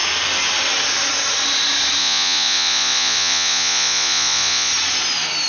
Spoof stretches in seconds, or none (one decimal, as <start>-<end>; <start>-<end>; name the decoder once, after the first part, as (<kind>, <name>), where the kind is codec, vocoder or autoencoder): 2.0-4.7 (vocoder, Vocos)